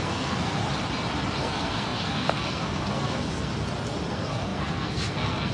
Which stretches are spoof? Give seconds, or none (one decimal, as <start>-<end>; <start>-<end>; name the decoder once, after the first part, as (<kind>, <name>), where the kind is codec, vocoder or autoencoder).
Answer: 0.0-0.6 (codec, SNAC); 1.4-3.5; 4.1-5.5